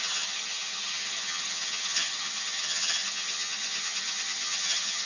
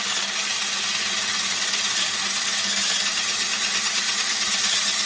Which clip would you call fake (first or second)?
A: first